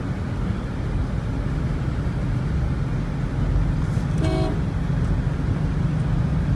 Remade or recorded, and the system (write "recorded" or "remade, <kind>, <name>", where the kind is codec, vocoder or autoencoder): recorded